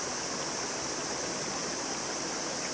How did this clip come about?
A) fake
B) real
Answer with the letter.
B